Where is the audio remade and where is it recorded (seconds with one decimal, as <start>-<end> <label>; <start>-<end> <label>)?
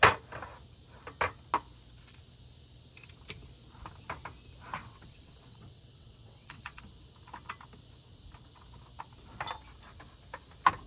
0.0-4.8 recorded; 4.8-6.8 remade; 6.8-10.9 recorded